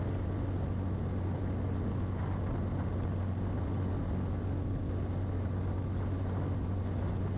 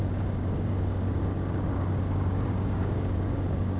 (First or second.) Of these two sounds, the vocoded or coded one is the second